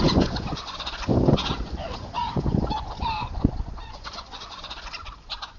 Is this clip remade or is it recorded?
remade